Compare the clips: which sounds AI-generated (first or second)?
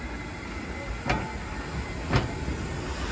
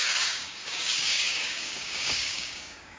second